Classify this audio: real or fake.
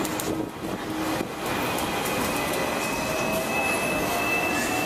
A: real